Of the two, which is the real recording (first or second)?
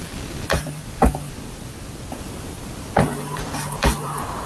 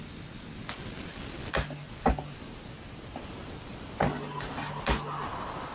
second